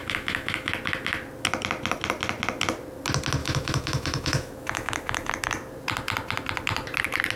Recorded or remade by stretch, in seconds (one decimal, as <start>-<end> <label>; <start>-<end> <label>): 0.0-0.7 remade; 0.7-3.4 recorded; 3.4-5.3 remade; 5.3-7.4 recorded